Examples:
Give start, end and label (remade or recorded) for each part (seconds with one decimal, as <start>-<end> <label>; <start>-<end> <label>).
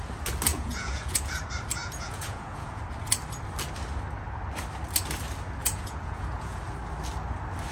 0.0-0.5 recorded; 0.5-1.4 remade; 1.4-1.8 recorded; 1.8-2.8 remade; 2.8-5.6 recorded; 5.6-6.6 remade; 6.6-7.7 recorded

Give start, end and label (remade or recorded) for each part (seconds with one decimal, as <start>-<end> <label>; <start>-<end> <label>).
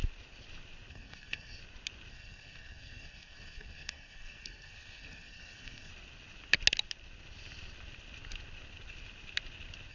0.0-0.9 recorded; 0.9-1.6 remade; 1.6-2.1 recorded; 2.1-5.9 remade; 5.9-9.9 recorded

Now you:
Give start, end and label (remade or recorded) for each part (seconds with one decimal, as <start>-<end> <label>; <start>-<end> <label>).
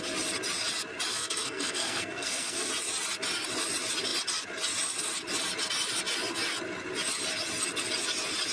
0.0-1.1 recorded; 1.1-2.7 remade; 2.7-8.5 recorded